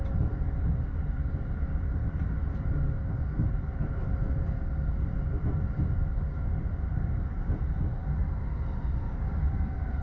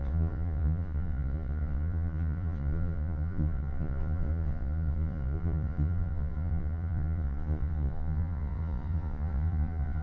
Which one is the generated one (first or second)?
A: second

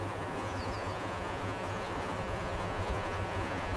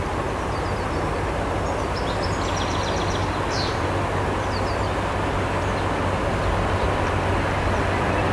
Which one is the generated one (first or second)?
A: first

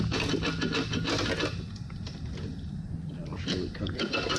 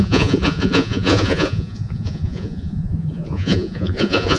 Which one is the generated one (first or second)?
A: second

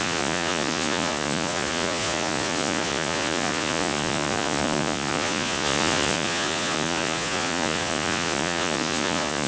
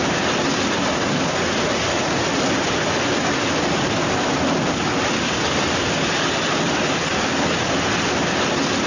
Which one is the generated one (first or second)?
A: first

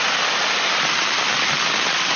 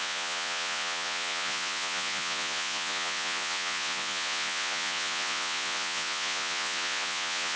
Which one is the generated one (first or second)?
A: second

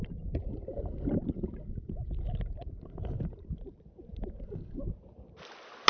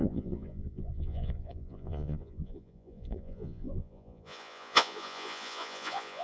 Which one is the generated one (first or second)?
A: second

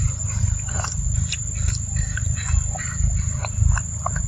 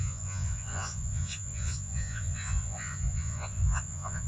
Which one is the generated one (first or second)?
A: second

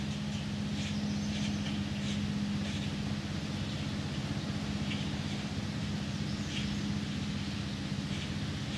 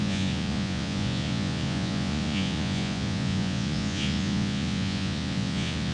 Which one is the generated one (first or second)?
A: second